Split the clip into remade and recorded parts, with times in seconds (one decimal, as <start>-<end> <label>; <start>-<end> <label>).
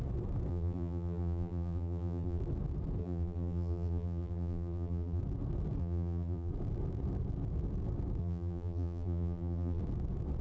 0.0-0.5 recorded; 0.5-2.4 remade; 2.4-3.0 recorded; 3.0-5.2 remade; 5.2-5.8 recorded; 5.8-6.5 remade; 6.5-8.2 recorded; 8.2-9.8 remade; 9.8-10.4 recorded